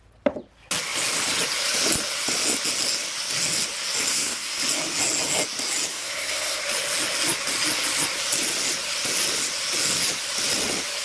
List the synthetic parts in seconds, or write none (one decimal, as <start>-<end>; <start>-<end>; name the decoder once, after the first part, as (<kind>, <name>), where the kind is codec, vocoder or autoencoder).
4.1-4.6 (codec, SNAC); 5.9-6.6